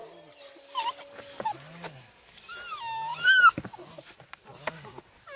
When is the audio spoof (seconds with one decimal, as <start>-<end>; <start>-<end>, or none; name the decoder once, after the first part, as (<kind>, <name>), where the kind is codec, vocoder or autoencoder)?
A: none

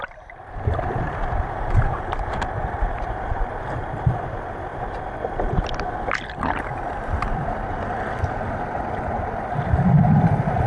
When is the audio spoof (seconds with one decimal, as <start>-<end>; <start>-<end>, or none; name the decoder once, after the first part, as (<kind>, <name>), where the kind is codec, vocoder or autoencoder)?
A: none

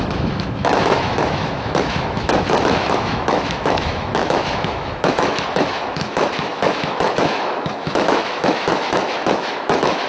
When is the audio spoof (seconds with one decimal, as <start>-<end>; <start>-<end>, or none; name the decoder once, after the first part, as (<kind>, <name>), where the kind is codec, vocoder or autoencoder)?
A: 0.0-10.1 (autoencoder, DAC-VAE)

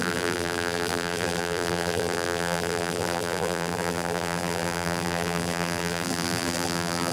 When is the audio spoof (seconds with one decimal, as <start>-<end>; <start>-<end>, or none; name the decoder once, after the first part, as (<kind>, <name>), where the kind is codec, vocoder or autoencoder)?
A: 0.0-7.1 (vocoder, BigVGAN v2)

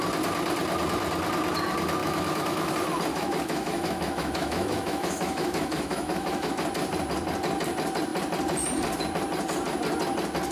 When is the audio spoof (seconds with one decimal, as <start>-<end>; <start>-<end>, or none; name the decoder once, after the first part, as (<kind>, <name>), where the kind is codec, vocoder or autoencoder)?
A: 2.0-2.7 (autoencoder, DAC-VAE); 3.1-6.5

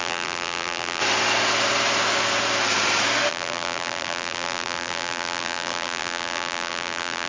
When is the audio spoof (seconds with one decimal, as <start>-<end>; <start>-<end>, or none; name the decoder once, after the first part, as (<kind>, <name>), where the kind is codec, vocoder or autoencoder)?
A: 0.0-1.0 (vocoder, BigVGAN v2); 3.3-7.3

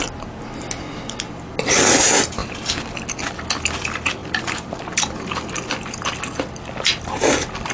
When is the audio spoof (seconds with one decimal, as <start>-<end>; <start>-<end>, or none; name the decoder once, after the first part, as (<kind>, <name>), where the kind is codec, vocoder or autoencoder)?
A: none

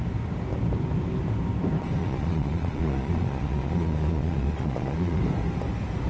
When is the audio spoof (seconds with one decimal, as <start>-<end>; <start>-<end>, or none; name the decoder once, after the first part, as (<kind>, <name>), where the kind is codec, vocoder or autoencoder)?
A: 2.0-5.2 (vocoder, Vocos)